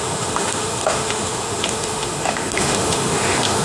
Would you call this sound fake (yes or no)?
yes